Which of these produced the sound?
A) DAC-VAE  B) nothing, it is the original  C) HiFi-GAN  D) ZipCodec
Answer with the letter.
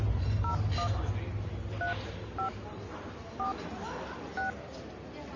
B